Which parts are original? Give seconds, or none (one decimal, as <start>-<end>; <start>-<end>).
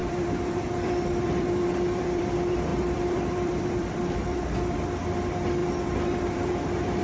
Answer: none